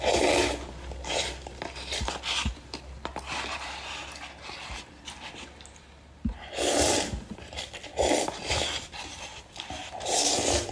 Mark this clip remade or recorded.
recorded